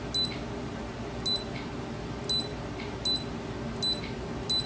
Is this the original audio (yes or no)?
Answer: yes